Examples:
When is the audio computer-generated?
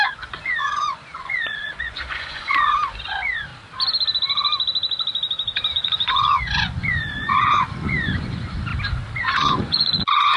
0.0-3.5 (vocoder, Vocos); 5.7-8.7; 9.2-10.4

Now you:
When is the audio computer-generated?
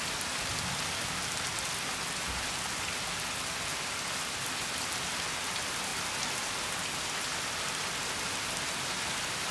none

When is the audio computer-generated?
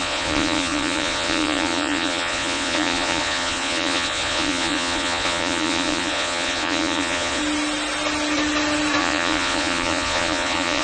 0.0-7.4 (vocoder, Vocos); 9.0-10.8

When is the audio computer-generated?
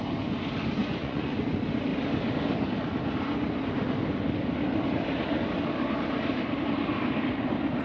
0.8-1.4 (vocoder, Vocos)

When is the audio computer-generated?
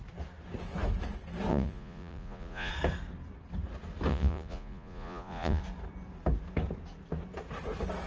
1.5-2.7 (vocoder, Vocos); 4.1-5.6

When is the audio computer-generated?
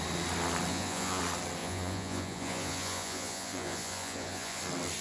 0.7-1.2 (vocoder, Vocos); 1.6-4.6